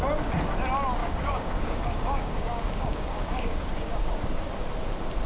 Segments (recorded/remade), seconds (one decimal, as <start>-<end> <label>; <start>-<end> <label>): 0.0-1.0 recorded; 1.0-4.2 remade; 4.2-5.3 recorded